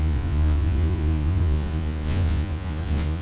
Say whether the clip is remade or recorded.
remade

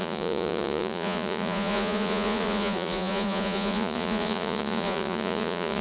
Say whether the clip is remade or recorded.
remade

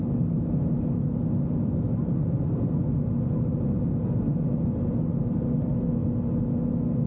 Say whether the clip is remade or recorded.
recorded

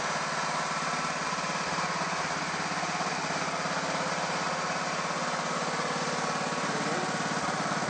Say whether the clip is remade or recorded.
recorded